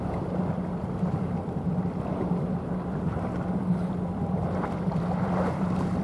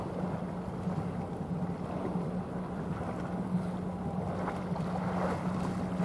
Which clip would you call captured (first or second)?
second